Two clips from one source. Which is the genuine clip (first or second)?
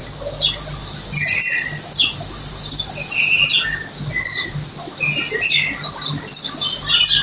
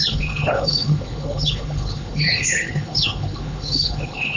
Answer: first